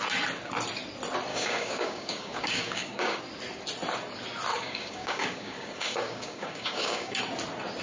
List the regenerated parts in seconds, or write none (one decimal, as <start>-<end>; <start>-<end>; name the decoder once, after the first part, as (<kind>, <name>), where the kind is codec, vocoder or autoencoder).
1.3-3.2 (codec, DAC); 4.5-7.2